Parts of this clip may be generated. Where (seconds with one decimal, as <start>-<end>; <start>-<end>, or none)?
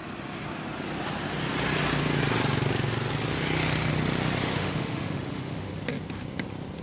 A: 4.4-5.7